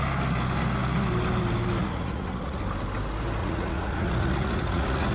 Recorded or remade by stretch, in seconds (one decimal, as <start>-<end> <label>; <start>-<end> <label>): 0.0-1.8 recorded; 1.8-2.6 remade; 2.6-3.4 recorded; 3.4-5.1 remade